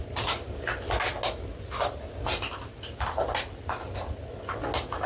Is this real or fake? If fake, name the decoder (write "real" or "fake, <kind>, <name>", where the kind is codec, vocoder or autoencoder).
real